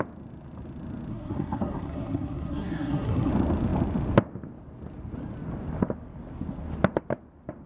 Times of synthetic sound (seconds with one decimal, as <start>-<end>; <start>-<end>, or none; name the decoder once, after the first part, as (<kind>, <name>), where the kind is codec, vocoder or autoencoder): 1.1-3.3 (codec, SNAC)